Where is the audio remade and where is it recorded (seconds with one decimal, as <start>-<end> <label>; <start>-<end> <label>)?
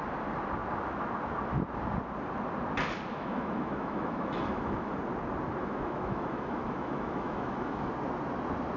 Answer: 0.0-3.1 recorded; 3.1-5.0 remade; 5.0-5.6 recorded; 5.6-7.9 remade; 7.9-8.8 recorded